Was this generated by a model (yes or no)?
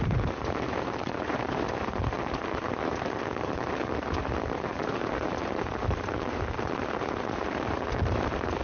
yes